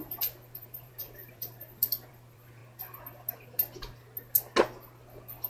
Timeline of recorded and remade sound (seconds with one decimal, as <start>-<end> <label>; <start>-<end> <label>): 0.0-2.6 remade; 2.6-5.5 recorded

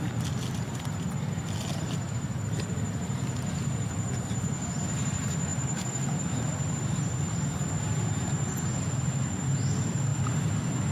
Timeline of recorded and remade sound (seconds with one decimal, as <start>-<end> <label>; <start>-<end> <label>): 0.0-5.5 recorded; 5.5-7.8 remade; 7.8-10.1 recorded; 10.1-10.9 remade

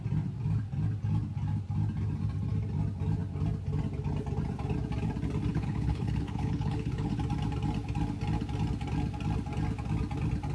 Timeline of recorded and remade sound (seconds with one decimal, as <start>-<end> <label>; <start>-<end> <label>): 0.0-5.5 recorded; 5.5-7.1 remade; 7.1-10.5 recorded

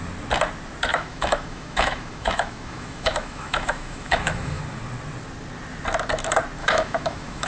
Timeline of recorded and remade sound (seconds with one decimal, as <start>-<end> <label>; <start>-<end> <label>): 0.0-0.9 recorded; 0.9-4.6 remade; 4.6-6.6 recorded; 6.6-7.5 remade

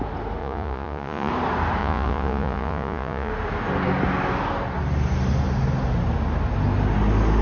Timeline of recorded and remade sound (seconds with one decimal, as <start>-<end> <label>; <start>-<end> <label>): 0.0-0.4 recorded; 0.4-1.3 remade; 1.3-1.8 recorded; 1.8-3.3 remade; 3.3-7.4 recorded

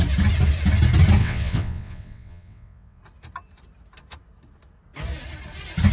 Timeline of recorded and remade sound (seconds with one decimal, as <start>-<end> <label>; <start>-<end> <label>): 0.0-1.2 recorded; 1.2-3.0 remade; 3.0-5.9 recorded